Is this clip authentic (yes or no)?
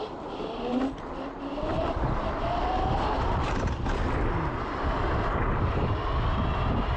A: yes